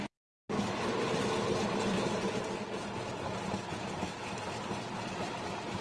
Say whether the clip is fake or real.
real